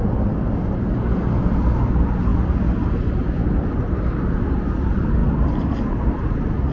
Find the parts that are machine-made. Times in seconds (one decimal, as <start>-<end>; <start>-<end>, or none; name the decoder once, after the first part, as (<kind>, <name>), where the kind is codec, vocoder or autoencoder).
none